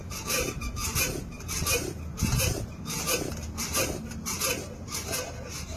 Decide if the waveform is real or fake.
fake